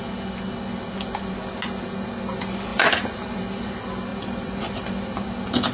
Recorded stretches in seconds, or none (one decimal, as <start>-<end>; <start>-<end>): 0.0-2.7; 3.4-4.1; 4.9-5.7